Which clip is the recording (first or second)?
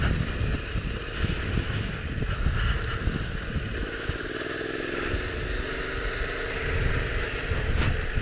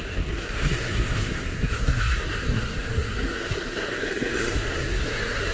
first